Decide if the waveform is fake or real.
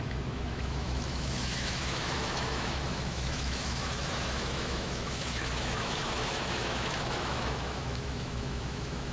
fake